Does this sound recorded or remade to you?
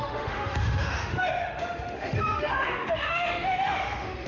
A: remade